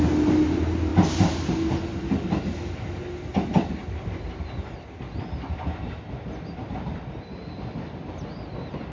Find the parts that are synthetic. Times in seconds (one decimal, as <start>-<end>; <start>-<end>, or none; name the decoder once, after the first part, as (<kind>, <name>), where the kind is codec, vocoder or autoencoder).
none

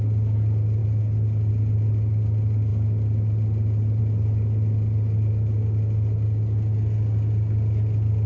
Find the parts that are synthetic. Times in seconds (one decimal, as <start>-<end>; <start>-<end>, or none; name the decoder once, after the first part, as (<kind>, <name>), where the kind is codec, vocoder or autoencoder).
none

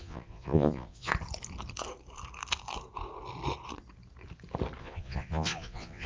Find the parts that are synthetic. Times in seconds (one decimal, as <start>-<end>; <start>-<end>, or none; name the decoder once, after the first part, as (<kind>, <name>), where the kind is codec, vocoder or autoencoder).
0.0-1.1 (vocoder, Vocos); 4.8-6.1

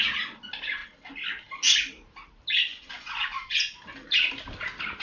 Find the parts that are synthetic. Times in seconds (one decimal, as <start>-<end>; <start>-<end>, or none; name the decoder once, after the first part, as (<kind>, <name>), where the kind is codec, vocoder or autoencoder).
2.7-3.7 (vocoder, Vocos)

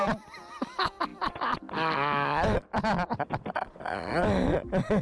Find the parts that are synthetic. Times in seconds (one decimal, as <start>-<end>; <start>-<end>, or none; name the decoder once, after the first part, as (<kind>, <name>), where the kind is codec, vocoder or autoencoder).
none